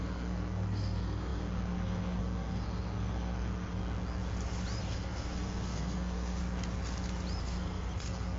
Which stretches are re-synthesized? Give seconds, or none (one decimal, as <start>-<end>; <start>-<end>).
0.0-3.8; 4.8-6.4; 7.4-8.4